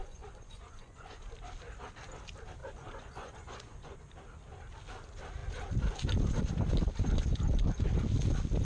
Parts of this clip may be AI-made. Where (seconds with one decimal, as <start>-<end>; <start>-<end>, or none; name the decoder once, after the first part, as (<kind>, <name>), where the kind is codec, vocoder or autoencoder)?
0.0-1.2 (vocoder, Vocos); 2.6-4.0